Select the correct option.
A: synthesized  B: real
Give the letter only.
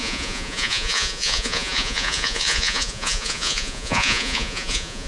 A